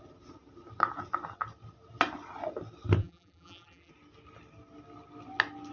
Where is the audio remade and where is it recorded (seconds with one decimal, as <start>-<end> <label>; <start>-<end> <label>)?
0.0-3.0 recorded; 3.0-3.9 remade; 3.9-5.7 recorded